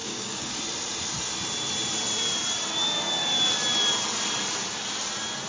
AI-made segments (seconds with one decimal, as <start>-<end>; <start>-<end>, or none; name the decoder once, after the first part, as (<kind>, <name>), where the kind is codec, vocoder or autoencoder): 0.0-0.6 (codec, DAC)